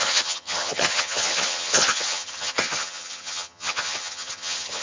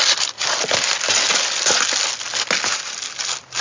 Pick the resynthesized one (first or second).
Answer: first